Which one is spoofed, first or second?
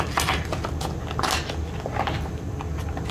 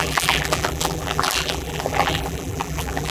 second